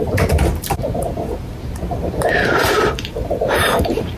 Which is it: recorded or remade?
remade